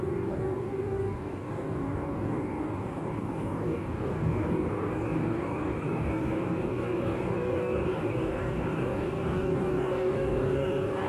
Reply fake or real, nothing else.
fake